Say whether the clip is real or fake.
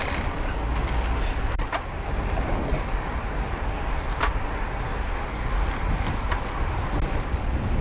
real